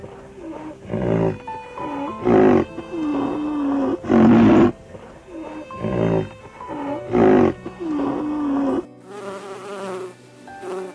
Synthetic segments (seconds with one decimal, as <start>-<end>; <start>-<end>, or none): none